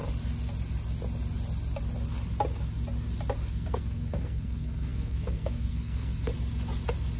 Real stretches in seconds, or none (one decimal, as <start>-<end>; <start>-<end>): 0.0-3.5; 6.3-7.2